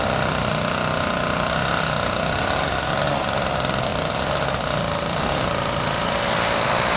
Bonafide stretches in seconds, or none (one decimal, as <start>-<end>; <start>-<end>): 0.0-7.0